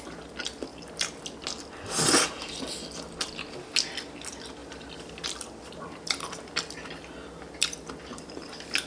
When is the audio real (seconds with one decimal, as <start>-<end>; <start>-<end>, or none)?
0.0-0.7; 1.2-4.6; 8.2-8.9